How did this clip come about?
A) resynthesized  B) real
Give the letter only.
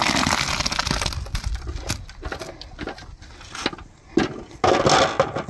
B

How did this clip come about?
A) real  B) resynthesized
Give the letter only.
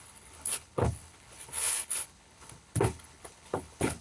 B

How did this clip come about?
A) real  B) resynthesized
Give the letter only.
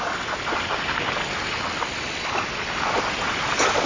A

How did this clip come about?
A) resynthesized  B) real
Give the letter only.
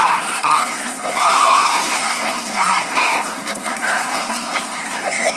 A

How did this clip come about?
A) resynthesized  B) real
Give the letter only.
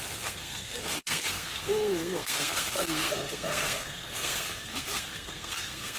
A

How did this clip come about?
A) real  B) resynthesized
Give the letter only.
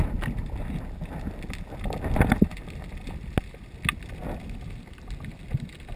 A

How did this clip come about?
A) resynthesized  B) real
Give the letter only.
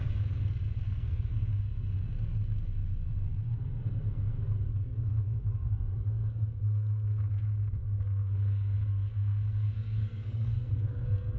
A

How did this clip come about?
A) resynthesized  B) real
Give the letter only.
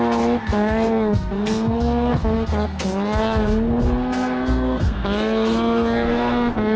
A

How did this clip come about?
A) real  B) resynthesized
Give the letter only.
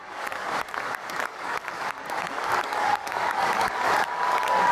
B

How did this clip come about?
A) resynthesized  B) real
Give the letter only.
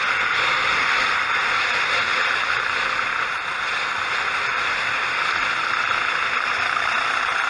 B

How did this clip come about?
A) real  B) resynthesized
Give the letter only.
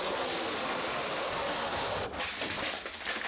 A